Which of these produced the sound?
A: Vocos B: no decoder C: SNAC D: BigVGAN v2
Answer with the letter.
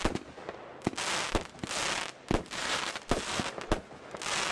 B